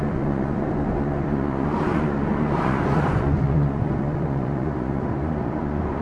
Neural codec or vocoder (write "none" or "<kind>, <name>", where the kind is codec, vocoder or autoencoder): vocoder, Vocos